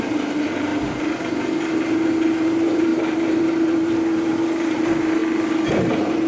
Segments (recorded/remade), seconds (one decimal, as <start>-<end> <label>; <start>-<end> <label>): 0.0-0.7 remade; 0.7-2.4 recorded; 2.4-5.2 remade; 5.2-5.8 recorded; 5.8-6.3 remade